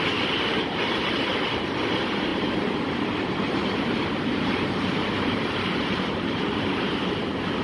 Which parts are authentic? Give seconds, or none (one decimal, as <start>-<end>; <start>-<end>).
0.0-0.5; 1.3-2.3; 6.9-7.6